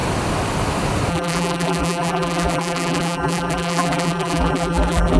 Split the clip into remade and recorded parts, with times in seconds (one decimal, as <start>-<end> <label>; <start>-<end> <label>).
0.0-1.1 recorded; 1.1-5.2 remade